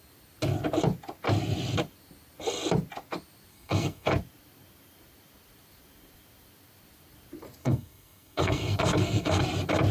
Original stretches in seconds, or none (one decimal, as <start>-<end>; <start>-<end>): 0.0-3.5; 4.1-7.6; 9.4-9.9